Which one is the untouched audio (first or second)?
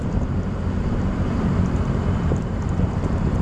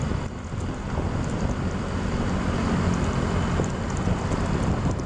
second